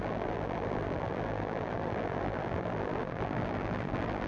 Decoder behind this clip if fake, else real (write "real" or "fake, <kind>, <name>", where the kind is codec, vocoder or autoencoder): fake, vocoder, BigVGAN v2